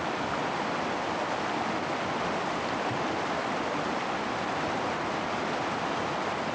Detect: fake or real real